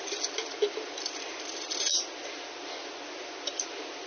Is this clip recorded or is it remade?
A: recorded